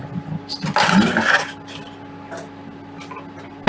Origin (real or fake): real